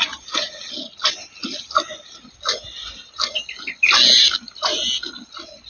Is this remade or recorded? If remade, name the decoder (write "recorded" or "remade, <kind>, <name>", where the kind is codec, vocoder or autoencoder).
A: recorded